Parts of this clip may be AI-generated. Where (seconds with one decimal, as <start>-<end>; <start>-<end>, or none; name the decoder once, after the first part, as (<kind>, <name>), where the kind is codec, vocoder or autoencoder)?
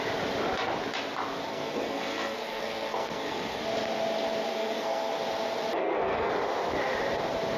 1.5-3.6 (codec, SNAC); 4.5-5.2; 5.8-6.3